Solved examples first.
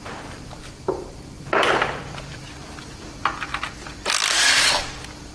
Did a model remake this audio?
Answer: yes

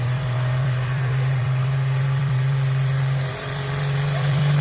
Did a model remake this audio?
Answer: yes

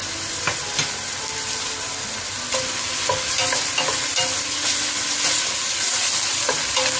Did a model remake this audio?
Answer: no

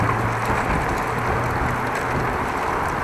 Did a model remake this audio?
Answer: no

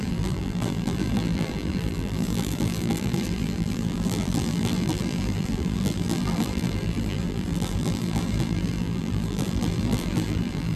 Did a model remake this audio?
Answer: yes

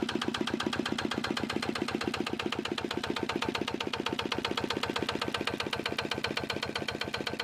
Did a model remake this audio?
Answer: no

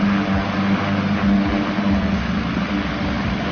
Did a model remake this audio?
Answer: no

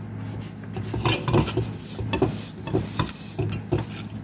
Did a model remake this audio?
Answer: no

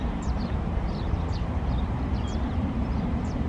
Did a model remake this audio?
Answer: yes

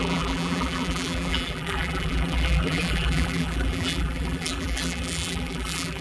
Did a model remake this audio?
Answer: yes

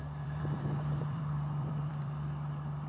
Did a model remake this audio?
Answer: yes